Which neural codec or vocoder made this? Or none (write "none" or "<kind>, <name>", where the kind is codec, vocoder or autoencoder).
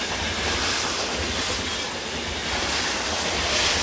none